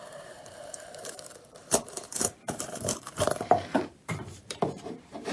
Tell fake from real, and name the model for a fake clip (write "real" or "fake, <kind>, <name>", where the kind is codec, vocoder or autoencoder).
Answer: fake, vocoder, BigVGAN v2